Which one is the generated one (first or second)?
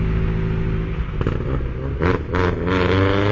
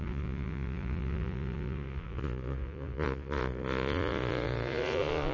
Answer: second